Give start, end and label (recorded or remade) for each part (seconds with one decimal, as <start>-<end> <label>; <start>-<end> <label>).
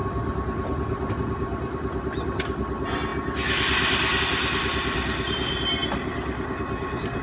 0.0-7.2 recorded